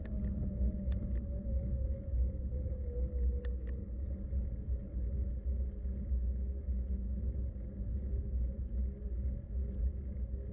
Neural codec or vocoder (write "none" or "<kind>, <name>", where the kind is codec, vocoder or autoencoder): none